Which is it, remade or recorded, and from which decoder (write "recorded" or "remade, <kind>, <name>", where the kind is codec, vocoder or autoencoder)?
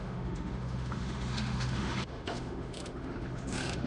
remade, autoencoder, DAC-VAE